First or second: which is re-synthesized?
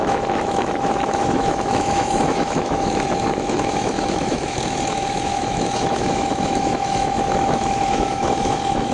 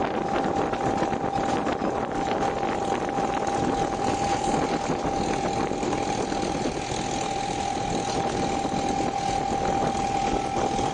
first